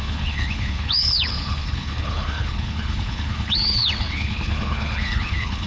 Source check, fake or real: fake